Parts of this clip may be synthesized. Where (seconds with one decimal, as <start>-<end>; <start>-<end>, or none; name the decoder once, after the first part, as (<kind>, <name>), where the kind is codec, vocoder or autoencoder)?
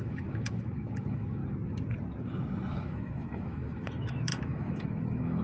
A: 0.0-1.4 (autoencoder, DAC-VAE); 2.7-5.4